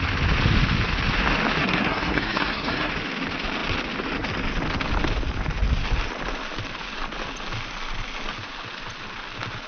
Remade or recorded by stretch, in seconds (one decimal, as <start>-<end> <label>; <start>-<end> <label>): 0.0-1.6 recorded; 1.6-2.9 remade; 2.9-9.7 recorded